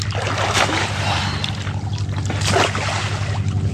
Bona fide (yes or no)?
yes